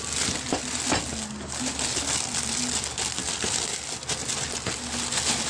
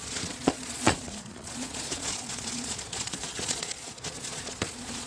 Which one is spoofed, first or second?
second